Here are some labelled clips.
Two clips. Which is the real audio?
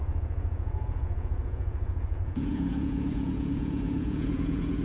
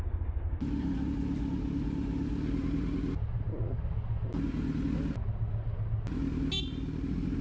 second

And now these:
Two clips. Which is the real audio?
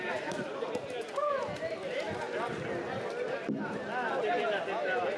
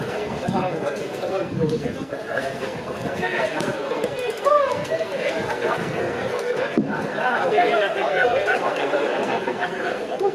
first